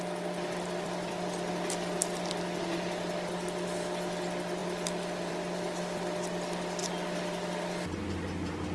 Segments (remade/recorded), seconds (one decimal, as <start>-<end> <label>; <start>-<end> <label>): 0.0-8.7 recorded